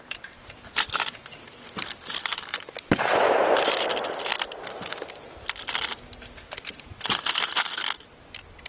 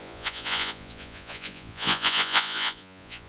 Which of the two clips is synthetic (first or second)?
second